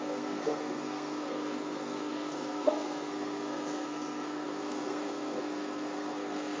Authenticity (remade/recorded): remade